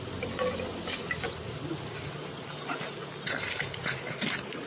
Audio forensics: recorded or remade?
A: recorded